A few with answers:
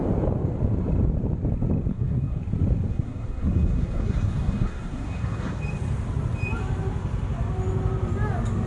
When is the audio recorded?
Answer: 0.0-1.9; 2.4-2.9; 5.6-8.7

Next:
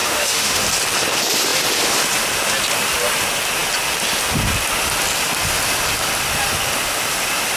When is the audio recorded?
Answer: 0.6-7.6

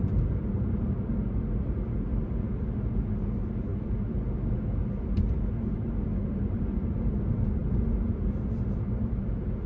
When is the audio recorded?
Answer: 0.0-9.7

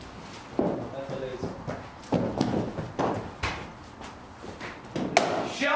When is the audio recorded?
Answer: 0.0-5.8

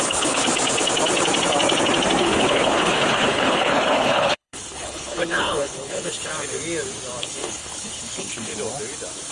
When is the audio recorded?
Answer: 0.5-2.2; 6.3-7.2; 8.5-9.3